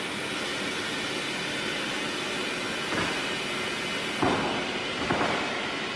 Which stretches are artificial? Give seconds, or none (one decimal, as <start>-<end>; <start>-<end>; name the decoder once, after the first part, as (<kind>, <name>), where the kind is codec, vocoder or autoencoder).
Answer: none